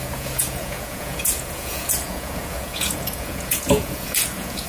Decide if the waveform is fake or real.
fake